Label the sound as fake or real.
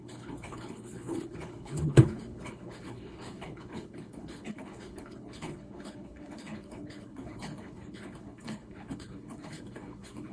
fake